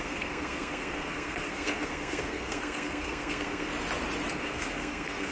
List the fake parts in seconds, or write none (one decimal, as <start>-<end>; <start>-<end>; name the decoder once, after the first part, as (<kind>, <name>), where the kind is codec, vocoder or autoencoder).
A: 0.0-3.7 (codec, SNAC); 4.3-5.3